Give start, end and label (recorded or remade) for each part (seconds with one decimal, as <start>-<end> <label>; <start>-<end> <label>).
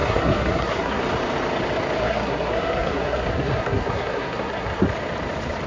0.0-1.0 remade; 1.0-2.0 recorded; 2.0-4.9 remade; 4.9-5.7 recorded